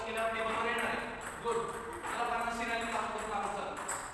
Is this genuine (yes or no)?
yes